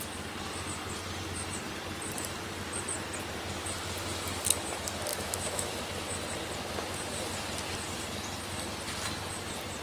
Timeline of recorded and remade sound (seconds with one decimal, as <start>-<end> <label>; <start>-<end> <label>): 0.0-5.1 recorded; 5.1-5.8 remade; 5.8-9.8 recorded